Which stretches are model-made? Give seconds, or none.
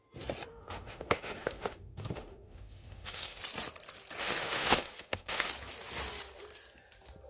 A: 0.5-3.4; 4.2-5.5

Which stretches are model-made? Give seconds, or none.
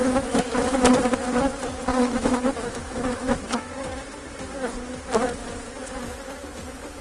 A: 0.0-0.9; 1.9-3.7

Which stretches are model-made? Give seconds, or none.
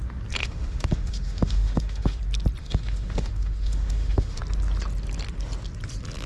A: 0.4-2.2; 2.6-4.4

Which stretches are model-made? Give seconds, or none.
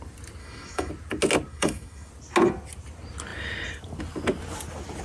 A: 0.4-0.9; 1.5-2.1